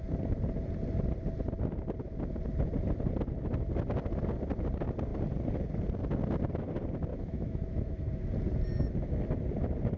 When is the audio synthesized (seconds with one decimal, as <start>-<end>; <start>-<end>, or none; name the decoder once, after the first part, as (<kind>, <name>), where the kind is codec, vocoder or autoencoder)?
7.1-8.3 (autoencoder, DAC-VAE)